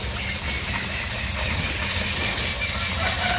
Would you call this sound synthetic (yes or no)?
no